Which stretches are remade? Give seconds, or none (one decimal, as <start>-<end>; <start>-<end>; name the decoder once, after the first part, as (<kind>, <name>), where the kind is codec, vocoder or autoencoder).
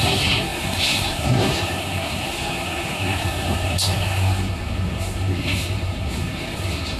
0.0-7.0 (codec, SNAC)